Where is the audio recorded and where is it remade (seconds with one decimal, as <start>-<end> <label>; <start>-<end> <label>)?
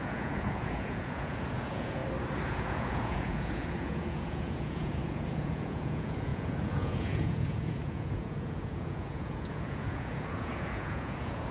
0.0-2.0 remade; 2.0-2.5 recorded; 2.5-11.5 remade